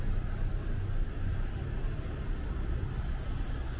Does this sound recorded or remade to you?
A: recorded